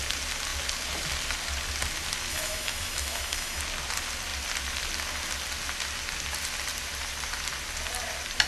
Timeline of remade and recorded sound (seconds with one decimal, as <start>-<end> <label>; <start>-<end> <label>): 0.0-2.3 recorded; 2.3-3.6 remade; 3.6-8.5 recorded